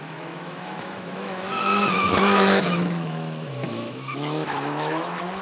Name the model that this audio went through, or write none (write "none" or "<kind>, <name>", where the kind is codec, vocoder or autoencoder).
autoencoder, DAC-VAE